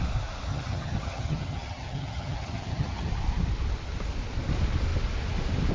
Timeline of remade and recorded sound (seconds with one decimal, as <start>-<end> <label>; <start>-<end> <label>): 0.0-0.5 recorded; 0.5-3.1 remade; 3.1-5.7 recorded